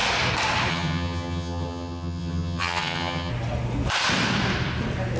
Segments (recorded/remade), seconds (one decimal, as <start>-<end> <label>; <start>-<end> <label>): 0.0-0.7 recorded; 0.7-3.3 remade; 3.3-5.2 recorded